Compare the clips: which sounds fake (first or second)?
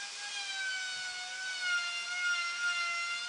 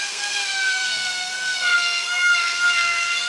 second